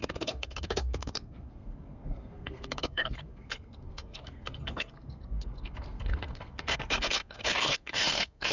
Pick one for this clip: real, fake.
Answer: fake